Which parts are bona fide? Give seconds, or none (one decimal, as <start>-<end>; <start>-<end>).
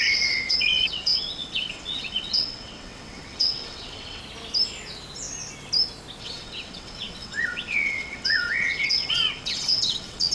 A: 4.2-6.2